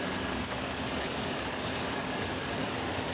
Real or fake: fake